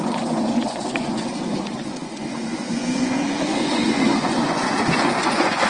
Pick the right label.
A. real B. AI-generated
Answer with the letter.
B